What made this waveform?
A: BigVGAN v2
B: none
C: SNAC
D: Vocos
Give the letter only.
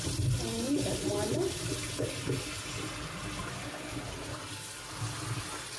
B